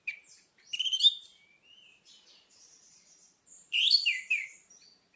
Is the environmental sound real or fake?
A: fake